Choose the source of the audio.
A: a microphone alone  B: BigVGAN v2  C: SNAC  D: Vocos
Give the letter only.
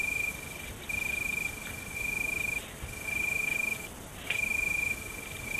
A